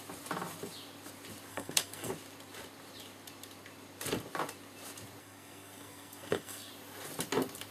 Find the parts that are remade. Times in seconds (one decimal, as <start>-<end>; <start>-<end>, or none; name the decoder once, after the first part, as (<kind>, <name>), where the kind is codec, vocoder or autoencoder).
1.5-2.1 (codec, SNAC); 5.2-6.7